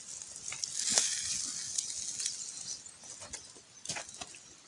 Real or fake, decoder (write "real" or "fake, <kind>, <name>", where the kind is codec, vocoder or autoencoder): real